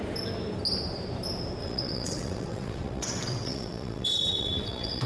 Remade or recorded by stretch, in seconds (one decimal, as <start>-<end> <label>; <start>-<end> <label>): 0.0-1.6 recorded; 1.6-5.1 remade